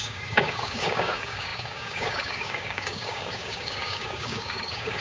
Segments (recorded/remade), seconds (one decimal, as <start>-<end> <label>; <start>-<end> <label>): 0.0-5.0 remade

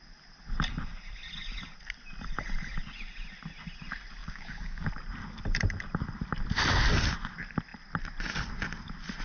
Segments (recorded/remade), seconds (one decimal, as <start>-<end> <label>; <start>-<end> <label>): 0.0-4.2 recorded; 4.2-4.9 remade; 4.9-9.2 recorded

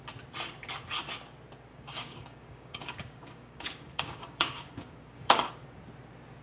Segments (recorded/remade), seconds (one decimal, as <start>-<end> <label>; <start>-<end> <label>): 0.0-1.7 recorded; 1.7-5.5 remade; 5.5-6.4 recorded

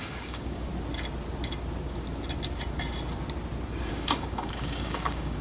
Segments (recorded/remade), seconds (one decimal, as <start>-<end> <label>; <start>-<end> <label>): 0.0-0.7 remade; 0.7-3.9 recorded; 3.9-5.4 remade

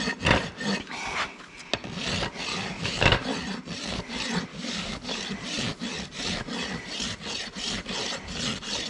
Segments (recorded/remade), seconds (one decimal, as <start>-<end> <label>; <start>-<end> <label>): 0.0-2.5 recorded; 2.5-3.2 remade; 3.2-4.5 recorded; 4.5-5.2 remade; 5.2-8.9 recorded

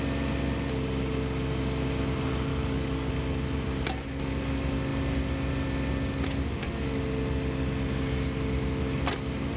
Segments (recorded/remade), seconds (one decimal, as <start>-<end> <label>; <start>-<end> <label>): 0.0-2.5 recorded; 2.5-3.1 remade; 3.1-9.6 recorded